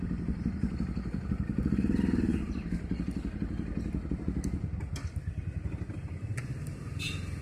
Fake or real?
real